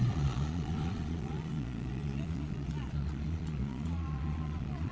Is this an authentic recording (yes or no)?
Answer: no